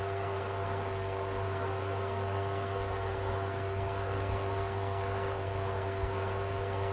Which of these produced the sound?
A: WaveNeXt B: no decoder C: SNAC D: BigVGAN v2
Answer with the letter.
C